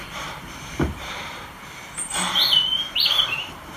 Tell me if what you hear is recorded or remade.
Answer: remade